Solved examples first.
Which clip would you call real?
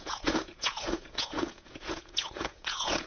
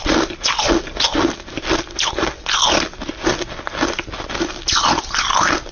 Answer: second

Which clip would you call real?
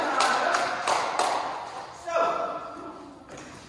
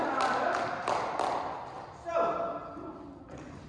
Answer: second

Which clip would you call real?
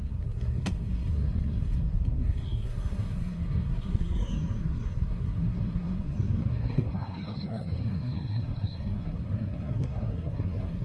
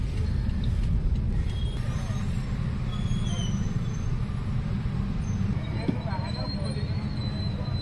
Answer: second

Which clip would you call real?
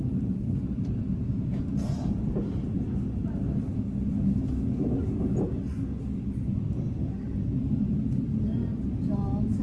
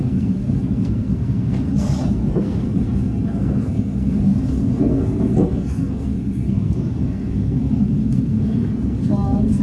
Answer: first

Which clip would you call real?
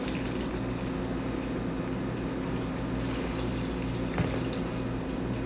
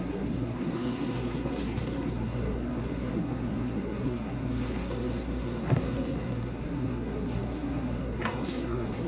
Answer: first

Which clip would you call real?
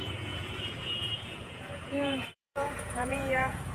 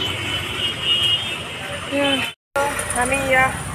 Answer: second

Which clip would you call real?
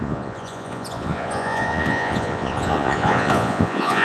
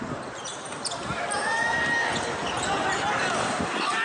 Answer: second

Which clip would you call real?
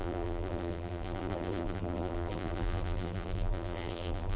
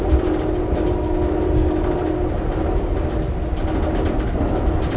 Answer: second